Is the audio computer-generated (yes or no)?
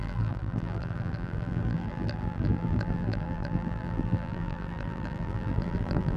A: yes